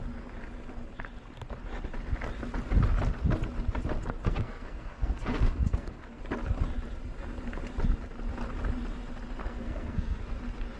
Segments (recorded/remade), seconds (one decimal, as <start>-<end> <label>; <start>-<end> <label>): 0.0-4.2 recorded; 4.2-6.2 remade; 6.2-9.4 recorded; 9.4-10.2 remade; 10.2-10.8 recorded